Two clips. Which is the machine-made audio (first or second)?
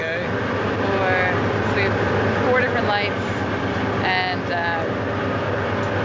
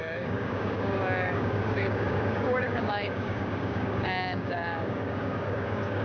second